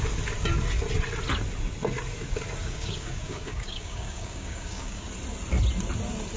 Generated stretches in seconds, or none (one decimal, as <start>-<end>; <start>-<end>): 2.6-5.1